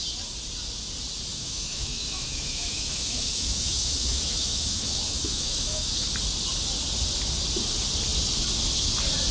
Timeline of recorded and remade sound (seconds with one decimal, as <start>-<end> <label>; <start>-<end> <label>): 0.0-1.3 recorded; 1.3-6.1 remade; 6.1-9.3 recorded